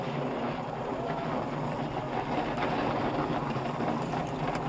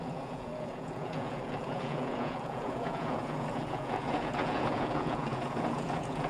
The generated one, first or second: second